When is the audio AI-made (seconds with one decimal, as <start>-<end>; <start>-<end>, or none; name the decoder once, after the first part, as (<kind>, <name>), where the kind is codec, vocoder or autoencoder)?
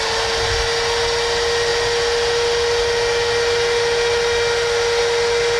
none